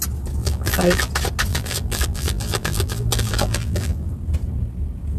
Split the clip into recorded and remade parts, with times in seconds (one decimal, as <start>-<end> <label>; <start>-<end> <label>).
0.0-0.4 recorded; 0.4-1.1 remade; 1.1-1.5 recorded; 1.5-4.1 remade; 4.1-5.2 recorded